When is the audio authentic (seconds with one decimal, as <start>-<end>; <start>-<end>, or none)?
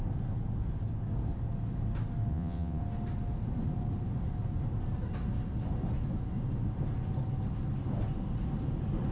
0.0-2.3; 2.8-9.1